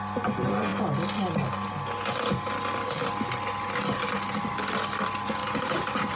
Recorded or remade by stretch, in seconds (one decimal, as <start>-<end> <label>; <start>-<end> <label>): 0.0-5.4 recorded; 5.4-6.1 remade